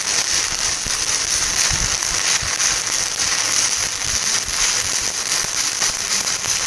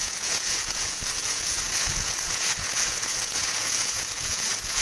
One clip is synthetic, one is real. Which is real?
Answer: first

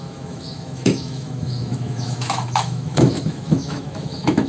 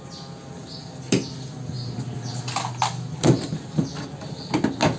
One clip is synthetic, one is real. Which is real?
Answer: second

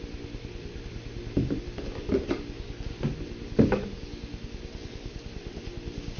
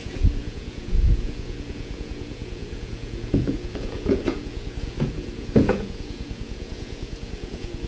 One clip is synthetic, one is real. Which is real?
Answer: first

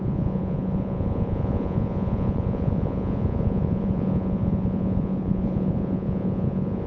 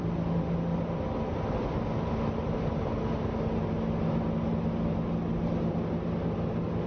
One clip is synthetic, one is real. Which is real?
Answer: second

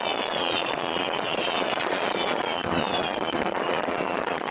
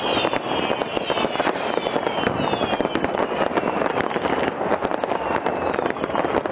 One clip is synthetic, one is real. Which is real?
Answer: second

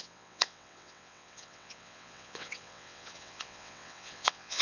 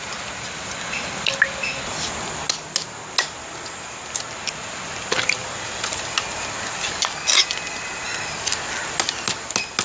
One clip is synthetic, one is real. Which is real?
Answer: second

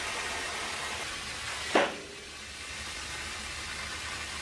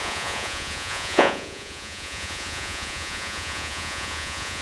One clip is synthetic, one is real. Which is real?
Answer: first